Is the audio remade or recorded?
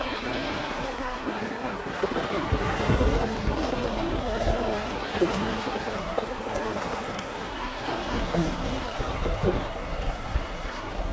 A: remade